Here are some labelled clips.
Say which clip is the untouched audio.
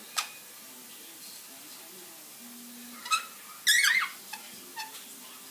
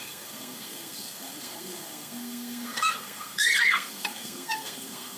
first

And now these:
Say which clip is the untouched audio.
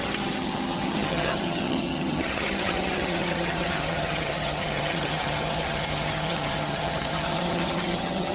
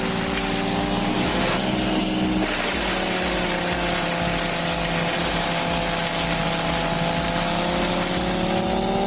second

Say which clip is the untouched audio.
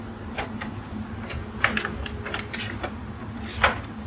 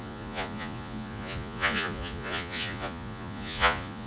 first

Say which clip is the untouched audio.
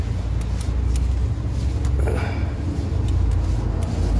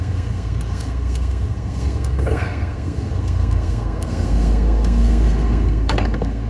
first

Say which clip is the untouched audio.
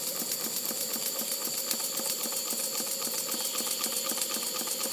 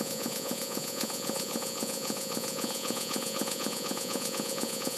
first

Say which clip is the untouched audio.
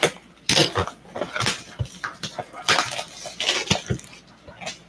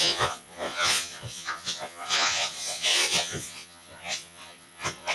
first